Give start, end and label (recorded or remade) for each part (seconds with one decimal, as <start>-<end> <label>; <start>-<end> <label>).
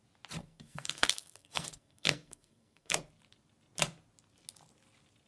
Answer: 0.0-0.4 recorded; 0.4-3.1 remade; 3.1-5.3 recorded